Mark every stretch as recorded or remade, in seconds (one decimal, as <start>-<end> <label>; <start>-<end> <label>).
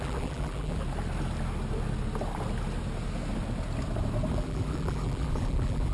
0.0-0.8 remade; 0.8-4.3 recorded; 4.3-5.9 remade